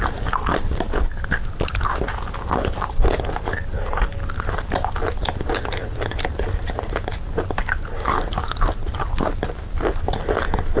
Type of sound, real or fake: real